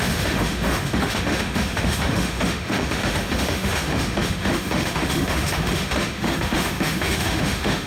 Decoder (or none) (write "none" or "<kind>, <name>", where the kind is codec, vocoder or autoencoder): autoencoder, DAC-VAE